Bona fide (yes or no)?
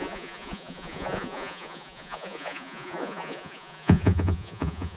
no